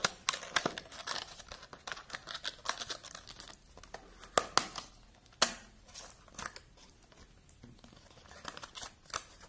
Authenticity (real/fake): real